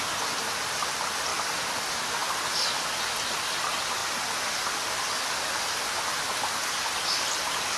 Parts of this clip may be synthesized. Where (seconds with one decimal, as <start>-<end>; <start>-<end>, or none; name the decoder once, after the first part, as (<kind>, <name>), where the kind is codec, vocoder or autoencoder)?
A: none